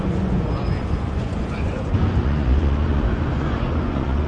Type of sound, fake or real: fake